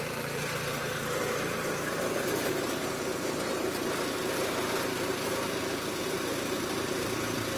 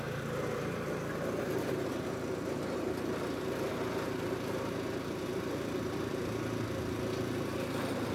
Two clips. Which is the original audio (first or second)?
second